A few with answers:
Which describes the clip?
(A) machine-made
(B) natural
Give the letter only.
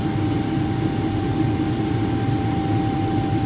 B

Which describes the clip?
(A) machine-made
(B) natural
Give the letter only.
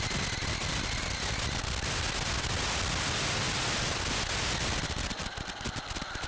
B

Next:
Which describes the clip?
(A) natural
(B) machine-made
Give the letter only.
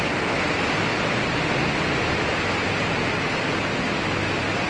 A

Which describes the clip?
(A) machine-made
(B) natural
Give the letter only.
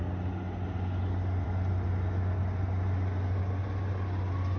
B